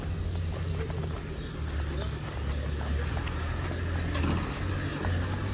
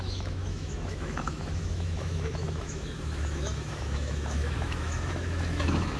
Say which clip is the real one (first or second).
first